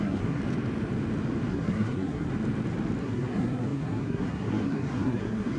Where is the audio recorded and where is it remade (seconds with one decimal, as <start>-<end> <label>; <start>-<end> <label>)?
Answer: 0.0-0.4 remade; 0.4-1.5 recorded; 1.5-2.3 remade; 2.3-3.0 recorded; 3.0-5.6 remade